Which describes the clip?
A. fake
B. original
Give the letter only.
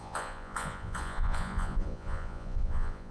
A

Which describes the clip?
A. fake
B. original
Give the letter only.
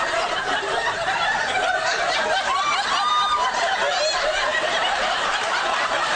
A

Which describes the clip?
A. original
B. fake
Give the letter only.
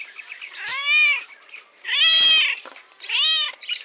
A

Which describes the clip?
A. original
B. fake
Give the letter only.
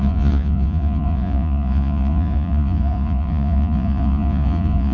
B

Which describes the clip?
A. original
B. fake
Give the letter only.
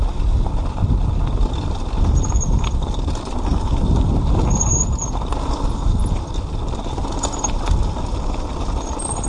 A